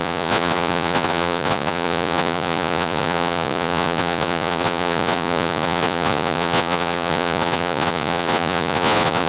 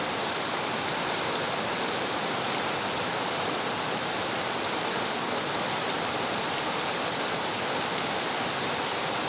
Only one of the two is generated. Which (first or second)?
first